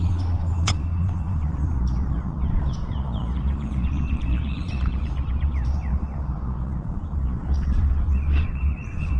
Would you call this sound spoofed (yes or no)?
yes